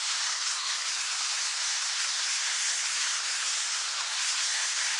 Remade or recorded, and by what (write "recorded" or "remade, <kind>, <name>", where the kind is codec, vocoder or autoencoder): remade, codec, SNAC